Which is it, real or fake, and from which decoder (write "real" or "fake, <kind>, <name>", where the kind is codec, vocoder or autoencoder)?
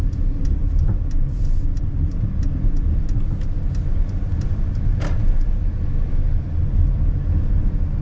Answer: real